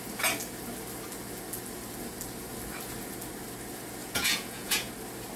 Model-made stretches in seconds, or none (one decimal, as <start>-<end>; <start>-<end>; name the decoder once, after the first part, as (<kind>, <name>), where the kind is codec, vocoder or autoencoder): 4.0-4.9 (vocoder, Vocos)